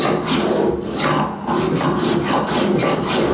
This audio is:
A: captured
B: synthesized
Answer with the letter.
A